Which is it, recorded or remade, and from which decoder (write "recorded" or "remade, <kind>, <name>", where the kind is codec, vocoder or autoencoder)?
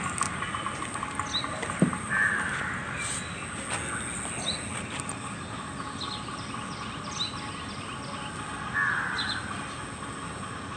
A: recorded